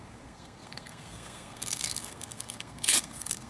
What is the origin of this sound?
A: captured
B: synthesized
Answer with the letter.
B